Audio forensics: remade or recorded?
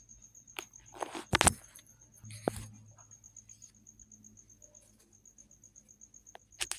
recorded